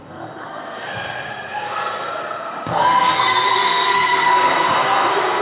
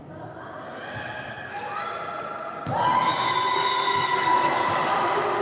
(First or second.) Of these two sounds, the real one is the second